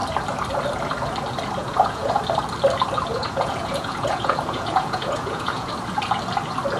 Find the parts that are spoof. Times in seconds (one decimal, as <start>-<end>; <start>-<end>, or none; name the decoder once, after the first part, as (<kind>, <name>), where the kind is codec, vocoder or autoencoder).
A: 1.6-2.2 (vocoder, Vocos); 3.1-5.7